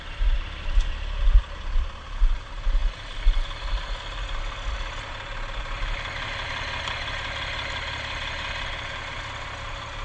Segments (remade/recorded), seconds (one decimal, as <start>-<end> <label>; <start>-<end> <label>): 0.0-10.0 recorded